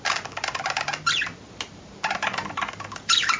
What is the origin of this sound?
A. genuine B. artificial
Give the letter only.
A